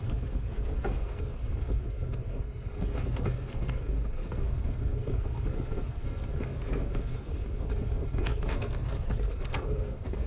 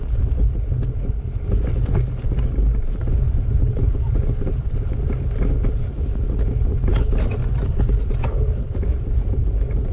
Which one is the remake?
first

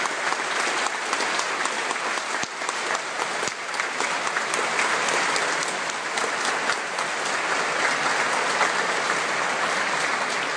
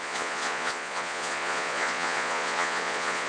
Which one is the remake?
second